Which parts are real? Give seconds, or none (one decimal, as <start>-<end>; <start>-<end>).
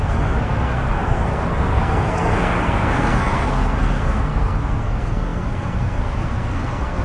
none